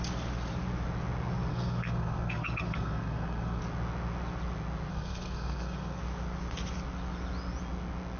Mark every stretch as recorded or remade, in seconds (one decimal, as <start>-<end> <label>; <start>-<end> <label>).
0.0-1.5 recorded; 1.5-3.6 remade; 3.6-4.9 recorded; 4.9-6.0 remade; 6.0-8.2 recorded